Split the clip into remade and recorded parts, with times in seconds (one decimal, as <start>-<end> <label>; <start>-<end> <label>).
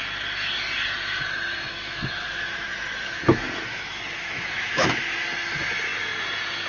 0.0-1.7 recorded; 1.7-5.0 remade; 5.0-6.7 recorded